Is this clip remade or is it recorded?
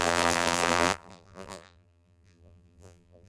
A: remade